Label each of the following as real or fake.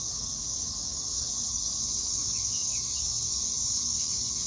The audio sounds fake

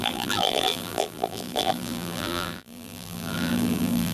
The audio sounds fake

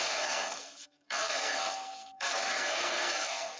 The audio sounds fake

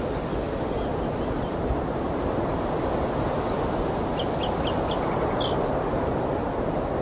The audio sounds real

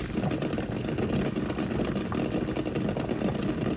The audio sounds real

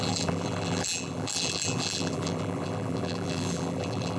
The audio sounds fake